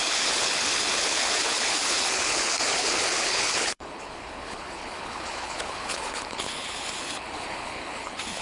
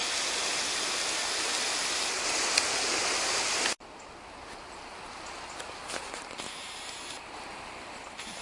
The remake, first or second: first